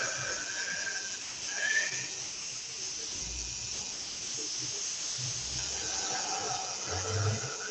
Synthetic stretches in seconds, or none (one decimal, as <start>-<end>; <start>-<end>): none